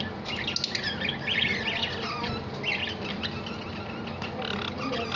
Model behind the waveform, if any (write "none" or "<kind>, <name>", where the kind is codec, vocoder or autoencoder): none